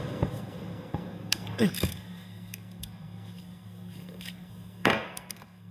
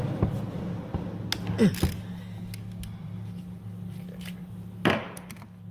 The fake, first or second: first